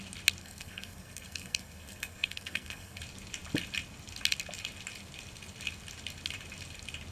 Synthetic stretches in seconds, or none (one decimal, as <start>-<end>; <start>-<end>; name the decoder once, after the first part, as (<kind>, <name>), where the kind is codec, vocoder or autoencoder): 0.4-3.0 (codec, SNAC)